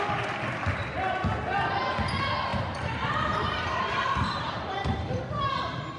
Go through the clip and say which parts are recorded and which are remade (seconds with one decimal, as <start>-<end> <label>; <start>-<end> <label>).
0.0-2.5 recorded; 2.5-5.2 remade; 5.2-6.0 recorded